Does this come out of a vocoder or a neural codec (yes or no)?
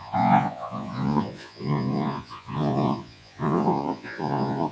yes